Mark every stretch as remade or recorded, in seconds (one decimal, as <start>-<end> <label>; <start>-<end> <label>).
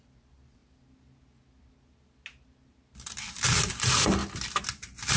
0.0-0.6 remade; 0.6-3.7 recorded; 3.7-4.2 remade; 4.2-5.2 recorded